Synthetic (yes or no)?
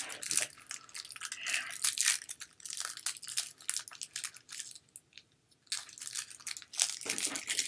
no